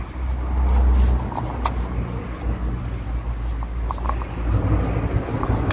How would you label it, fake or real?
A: real